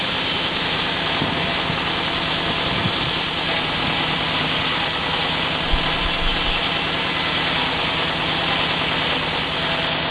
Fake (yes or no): no